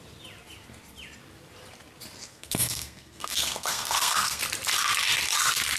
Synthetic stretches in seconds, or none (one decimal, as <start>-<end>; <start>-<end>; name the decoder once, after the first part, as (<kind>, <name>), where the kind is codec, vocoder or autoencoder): 2.2-4.4 (codec, SNAC)